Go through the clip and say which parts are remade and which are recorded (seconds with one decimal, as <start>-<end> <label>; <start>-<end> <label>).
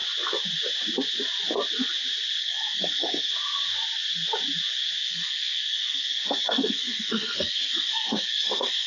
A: 0.0-2.4 recorded; 2.4-3.3 remade; 3.3-5.0 recorded; 5.0-8.9 remade